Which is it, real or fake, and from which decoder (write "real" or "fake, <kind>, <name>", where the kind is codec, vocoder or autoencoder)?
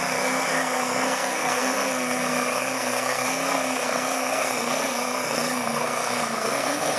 fake, codec, SNAC